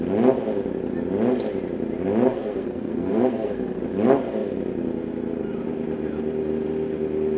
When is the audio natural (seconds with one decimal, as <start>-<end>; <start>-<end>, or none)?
0.0-2.3; 3.8-7.4